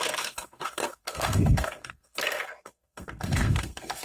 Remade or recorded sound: remade